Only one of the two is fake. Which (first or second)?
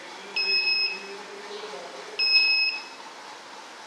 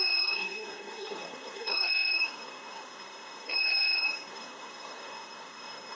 second